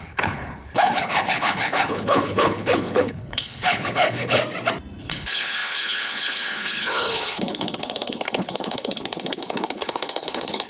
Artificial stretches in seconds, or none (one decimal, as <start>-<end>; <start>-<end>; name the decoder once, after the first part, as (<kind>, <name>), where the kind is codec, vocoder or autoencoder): 0.0-4.4 (codec, HILCodec); 5.0-10.7